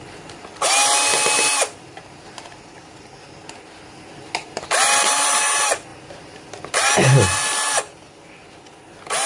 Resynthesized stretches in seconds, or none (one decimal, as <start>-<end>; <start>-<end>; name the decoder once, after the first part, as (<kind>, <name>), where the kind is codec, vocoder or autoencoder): 5.9-6.9 (vocoder, BigVGAN v2)